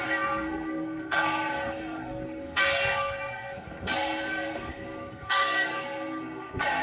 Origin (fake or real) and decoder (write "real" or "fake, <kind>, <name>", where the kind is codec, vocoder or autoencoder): fake, codec, SNAC